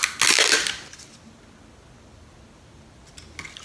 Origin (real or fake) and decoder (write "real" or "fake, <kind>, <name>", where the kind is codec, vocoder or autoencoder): real